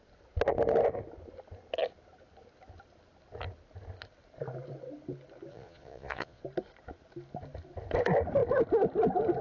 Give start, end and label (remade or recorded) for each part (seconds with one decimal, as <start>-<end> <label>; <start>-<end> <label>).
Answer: 0.0-5.5 recorded; 5.5-6.4 remade; 6.4-9.4 recorded